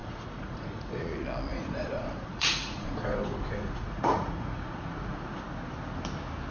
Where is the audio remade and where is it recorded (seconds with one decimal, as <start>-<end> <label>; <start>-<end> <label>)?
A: 0.0-1.0 remade; 1.0-1.5 recorded; 1.5-5.4 remade; 5.4-6.5 recorded